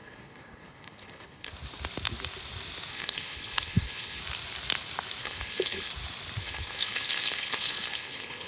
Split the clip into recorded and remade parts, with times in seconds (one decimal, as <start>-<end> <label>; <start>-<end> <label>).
0.0-1.5 remade; 1.5-2.9 recorded; 2.9-4.2 remade; 4.2-5.2 recorded; 5.2-5.9 remade; 5.9-6.4 recorded; 6.4-8.5 remade